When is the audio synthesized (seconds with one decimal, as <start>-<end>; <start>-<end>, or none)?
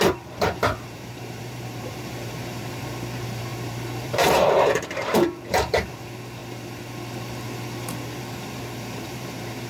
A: 0.0-6.4; 8.2-9.7